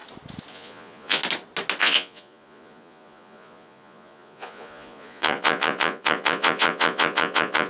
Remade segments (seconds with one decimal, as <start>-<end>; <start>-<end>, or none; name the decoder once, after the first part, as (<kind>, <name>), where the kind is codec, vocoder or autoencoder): 0.5-1.2 (vocoder, Vocos); 1.8-7.7